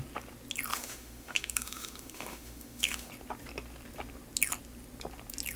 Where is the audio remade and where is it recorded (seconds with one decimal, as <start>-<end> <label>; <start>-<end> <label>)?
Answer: 0.0-0.7 recorded; 0.7-3.1 remade; 3.1-5.6 recorded